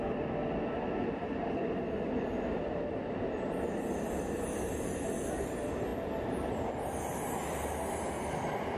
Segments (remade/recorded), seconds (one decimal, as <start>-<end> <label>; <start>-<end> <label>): 0.0-8.8 recorded